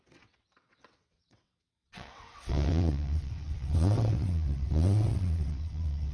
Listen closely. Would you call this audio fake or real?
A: fake